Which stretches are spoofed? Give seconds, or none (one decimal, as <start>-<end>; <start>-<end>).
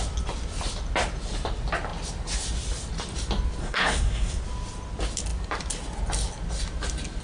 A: 3.6-4.4